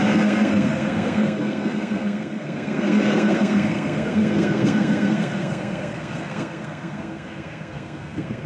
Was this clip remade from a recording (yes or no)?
yes